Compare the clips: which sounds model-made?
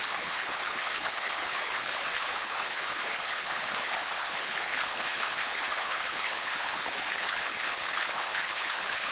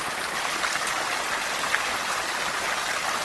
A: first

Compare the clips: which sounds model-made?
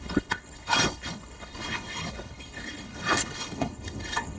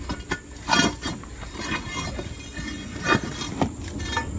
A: first